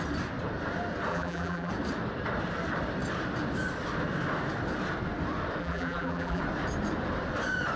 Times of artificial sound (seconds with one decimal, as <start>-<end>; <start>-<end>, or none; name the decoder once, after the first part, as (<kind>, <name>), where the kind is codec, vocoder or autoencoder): 1.1-1.7 (vocoder, BigVGAN v2); 5.6-6.4

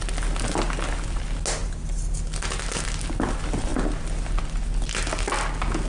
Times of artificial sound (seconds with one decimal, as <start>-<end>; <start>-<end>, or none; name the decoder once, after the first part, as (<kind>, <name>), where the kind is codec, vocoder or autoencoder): none

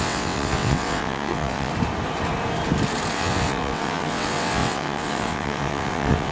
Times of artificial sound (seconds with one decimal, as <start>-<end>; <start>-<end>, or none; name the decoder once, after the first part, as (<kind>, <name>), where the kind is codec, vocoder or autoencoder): 0.0-1.7 (vocoder, WaveNeXt); 3.1-6.3

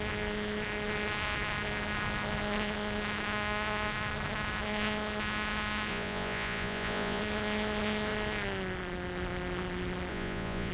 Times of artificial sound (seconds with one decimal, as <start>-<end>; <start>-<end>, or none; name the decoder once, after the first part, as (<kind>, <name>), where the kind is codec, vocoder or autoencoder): 5.9-7.2 (vocoder, Vocos); 10.1-10.7

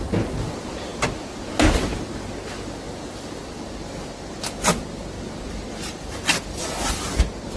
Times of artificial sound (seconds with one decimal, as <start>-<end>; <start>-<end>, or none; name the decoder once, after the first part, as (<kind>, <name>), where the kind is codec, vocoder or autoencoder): none

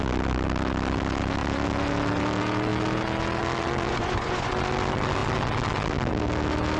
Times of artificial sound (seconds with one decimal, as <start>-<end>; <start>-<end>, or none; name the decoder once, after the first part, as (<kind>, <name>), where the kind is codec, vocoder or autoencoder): 3.9-4.5 (vocoder, Vocos)

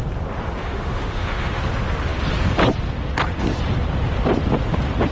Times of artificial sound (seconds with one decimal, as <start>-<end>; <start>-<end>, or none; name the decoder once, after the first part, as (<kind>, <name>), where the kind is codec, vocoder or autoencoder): 0.6-1.6 (autoencoder, DAC-VAE)